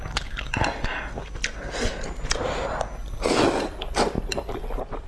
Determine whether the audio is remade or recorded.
recorded